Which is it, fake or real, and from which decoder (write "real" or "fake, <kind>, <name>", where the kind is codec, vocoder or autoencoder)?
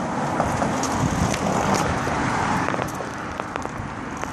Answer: real